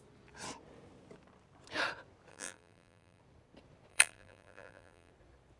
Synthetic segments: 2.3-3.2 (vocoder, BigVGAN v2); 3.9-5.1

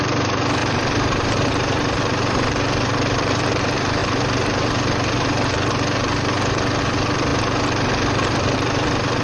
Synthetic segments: 0.6-2.5 (vocoder, BigVGAN v2)

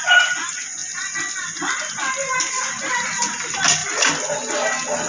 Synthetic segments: 3.8-5.1 (vocoder, BigVGAN v2)

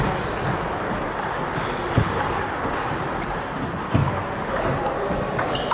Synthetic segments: 0.0-4.0 (vocoder, BigVGAN v2); 4.5-5.7

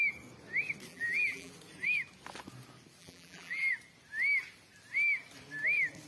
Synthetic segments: 0.9-1.5 (vocoder, BigVGAN v2); 3.0-3.7

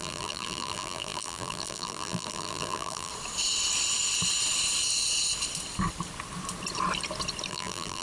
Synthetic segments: 0.0-3.1 (vocoder, BigVGAN v2); 7.5-8.0

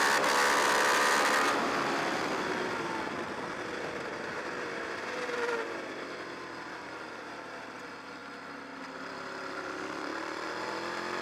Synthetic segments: 0.0-8.2 (vocoder, BigVGAN v2); 8.8-11.2

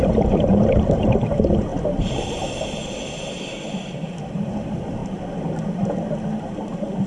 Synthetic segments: 0.0-5.0 (vocoder, BigVGAN v2); 6.4-7.1